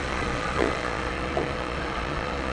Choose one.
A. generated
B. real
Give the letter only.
A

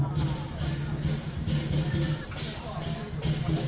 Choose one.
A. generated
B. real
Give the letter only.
A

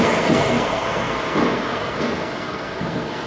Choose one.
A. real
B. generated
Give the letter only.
B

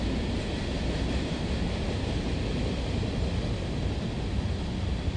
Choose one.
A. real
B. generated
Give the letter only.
A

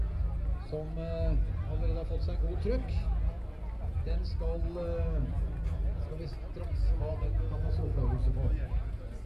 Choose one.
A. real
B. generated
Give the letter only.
A